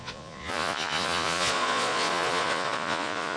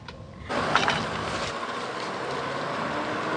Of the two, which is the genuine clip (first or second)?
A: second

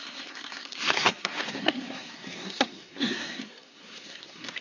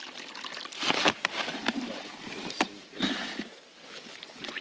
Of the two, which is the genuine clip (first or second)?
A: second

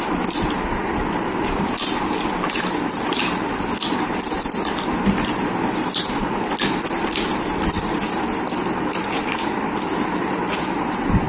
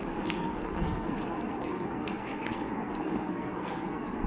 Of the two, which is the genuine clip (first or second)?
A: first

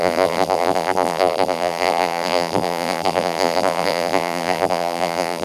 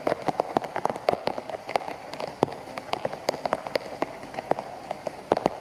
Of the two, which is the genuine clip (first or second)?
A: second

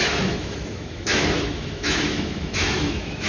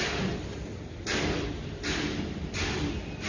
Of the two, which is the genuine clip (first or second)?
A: second